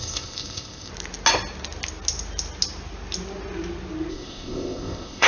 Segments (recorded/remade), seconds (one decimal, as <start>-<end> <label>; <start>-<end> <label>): 0.0-0.9 remade; 0.9-4.1 recorded; 4.1-5.3 remade